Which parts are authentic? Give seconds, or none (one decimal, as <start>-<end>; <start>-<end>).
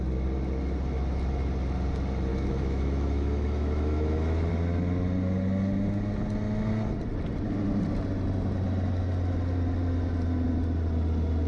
0.0-2.3; 4.5-11.5